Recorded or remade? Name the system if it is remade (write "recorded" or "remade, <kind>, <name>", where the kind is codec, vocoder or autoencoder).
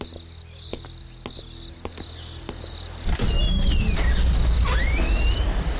recorded